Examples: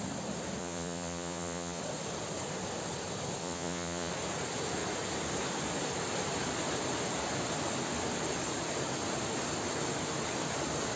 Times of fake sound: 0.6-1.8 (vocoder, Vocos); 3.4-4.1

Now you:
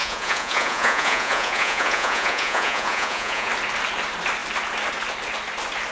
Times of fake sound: 0.0-3.5 (vocoder, Vocos)

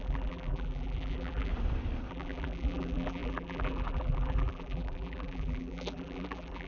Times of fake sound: 0.0-1.5 (vocoder, BigVGAN v2); 2.1-6.7

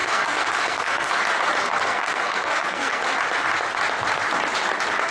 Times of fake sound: 0.0-1.1 (codec, SNAC); 1.6-3.0